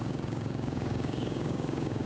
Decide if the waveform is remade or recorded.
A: remade